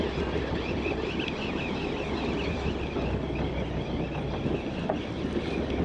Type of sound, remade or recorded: recorded